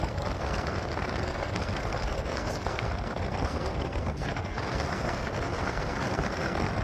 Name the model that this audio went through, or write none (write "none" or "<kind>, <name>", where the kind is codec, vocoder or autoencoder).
codec, SNAC